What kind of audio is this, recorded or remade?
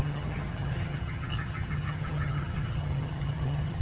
remade